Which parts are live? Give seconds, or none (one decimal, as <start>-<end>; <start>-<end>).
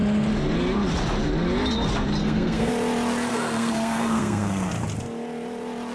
0.0-2.2; 2.7-3.3; 4.7-5.9